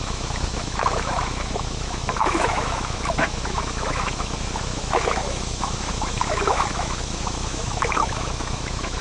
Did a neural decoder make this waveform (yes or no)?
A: yes